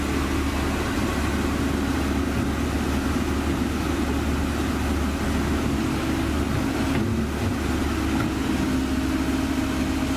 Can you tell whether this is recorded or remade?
recorded